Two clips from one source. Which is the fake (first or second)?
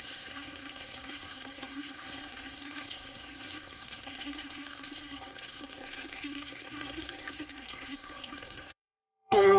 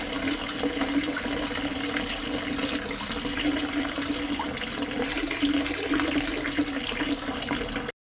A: first